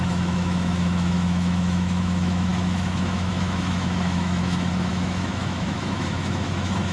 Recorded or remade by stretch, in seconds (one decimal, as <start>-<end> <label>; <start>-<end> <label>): 0.0-6.9 remade